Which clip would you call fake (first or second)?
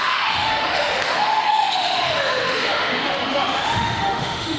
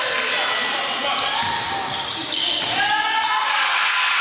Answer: first